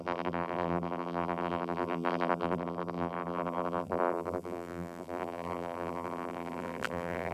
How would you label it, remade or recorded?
remade